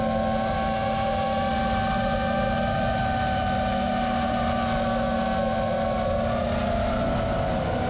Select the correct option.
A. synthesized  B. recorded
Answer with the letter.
B